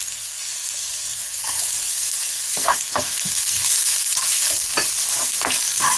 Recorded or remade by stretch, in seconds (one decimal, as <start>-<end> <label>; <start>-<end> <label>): 0.0-4.7 remade; 4.7-5.2 recorded; 5.2-6.0 remade